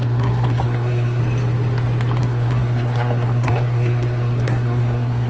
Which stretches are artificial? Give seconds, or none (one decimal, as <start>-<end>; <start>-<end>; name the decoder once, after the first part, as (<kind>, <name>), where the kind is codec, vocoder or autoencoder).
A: 0.0-1.2 (codec, SNAC); 2.2-5.3